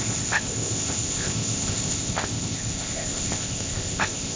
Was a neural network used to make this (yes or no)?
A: yes